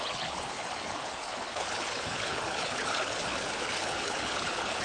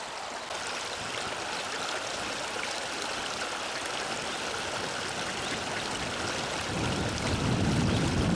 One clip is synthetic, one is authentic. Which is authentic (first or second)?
second